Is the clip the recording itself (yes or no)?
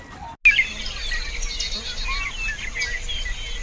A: yes